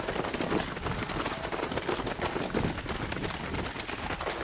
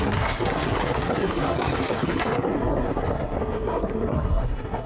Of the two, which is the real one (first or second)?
first